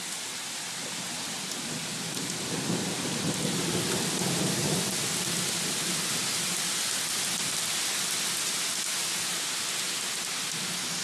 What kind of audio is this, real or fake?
real